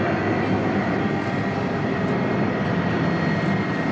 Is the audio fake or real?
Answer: real